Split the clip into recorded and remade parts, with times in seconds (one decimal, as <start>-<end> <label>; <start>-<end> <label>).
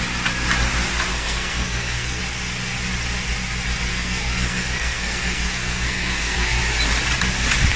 0.0-1.1 recorded; 1.1-2.2 remade; 2.2-3.9 recorded; 3.9-6.6 remade; 6.6-7.8 recorded